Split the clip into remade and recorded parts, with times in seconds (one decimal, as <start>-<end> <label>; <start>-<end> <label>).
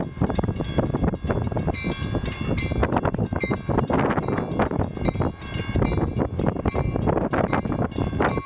0.0-8.5 recorded